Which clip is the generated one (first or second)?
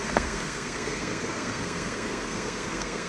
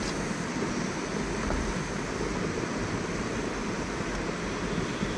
first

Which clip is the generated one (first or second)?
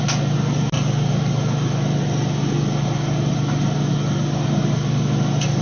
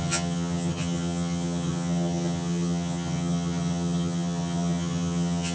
second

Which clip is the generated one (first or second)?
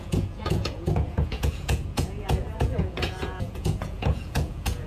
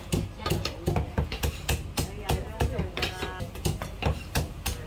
first